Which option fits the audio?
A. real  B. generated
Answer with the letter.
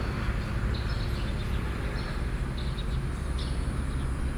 A